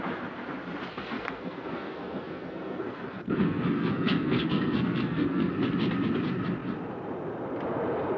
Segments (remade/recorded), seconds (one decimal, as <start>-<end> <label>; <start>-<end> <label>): 0.0-0.9 recorded; 0.9-5.5 remade; 5.5-8.2 recorded